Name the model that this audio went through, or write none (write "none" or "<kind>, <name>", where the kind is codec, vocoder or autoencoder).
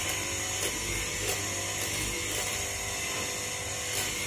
none